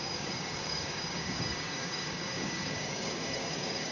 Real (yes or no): no